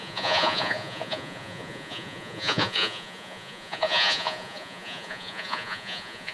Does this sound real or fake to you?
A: fake